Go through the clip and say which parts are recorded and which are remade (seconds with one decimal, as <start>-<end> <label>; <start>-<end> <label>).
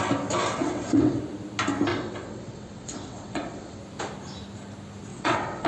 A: 0.0-0.6 recorded; 0.6-1.2 remade; 1.2-1.9 recorded; 1.9-3.8 remade; 3.8-5.1 recorded; 5.1-5.7 remade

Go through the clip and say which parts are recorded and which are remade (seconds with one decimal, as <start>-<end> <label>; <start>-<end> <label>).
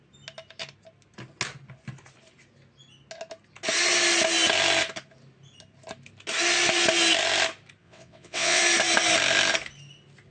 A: 0.0-7.8 recorded; 7.8-8.6 remade; 8.6-10.3 recorded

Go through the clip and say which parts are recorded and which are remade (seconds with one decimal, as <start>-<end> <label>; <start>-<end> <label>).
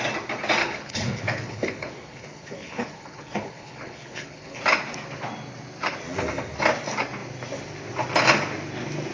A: 0.0-0.6 recorded; 0.6-4.6 remade; 4.6-9.1 recorded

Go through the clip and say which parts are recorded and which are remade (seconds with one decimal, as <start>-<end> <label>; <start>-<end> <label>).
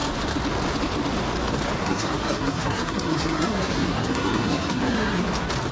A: 0.0-1.8 recorded; 1.8-5.2 remade; 5.2-5.7 recorded